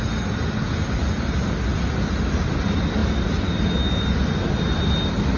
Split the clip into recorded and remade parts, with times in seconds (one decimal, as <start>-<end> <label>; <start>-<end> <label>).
0.0-5.4 recorded